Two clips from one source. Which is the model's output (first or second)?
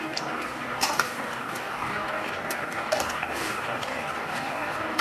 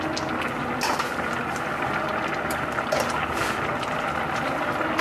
first